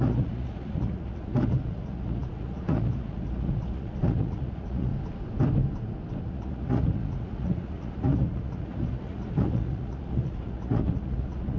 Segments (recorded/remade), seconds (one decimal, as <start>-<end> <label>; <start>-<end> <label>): 0.0-4.9 remade; 4.9-6.2 recorded; 6.2-11.6 remade